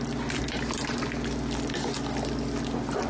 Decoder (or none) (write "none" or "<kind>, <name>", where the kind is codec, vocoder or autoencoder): none